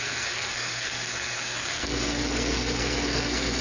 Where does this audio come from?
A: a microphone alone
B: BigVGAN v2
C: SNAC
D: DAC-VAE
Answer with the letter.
C